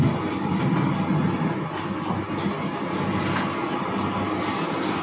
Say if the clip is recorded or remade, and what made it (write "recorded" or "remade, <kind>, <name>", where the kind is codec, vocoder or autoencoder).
recorded